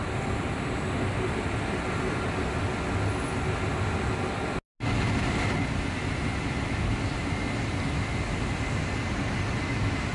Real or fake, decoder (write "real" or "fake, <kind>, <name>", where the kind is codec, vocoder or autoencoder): real